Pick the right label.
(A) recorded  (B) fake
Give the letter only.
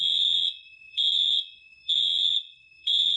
B